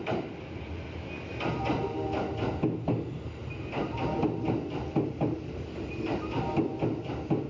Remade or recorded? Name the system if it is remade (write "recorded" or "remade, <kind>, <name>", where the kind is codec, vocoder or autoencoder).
recorded